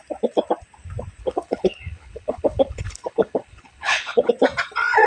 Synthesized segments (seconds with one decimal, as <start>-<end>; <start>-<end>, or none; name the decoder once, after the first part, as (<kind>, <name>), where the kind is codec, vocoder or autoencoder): 1.2-4.3 (codec, HILCodec)